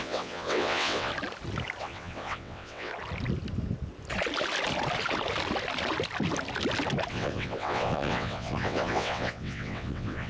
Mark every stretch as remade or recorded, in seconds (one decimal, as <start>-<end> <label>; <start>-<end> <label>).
0.0-1.1 remade; 1.1-1.8 recorded; 1.8-2.9 remade; 2.9-7.1 recorded; 7.1-10.3 remade